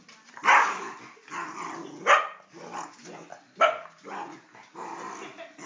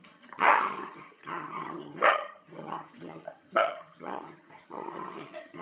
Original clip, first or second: first